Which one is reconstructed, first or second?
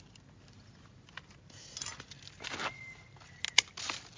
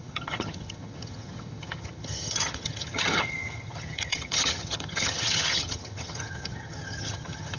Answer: second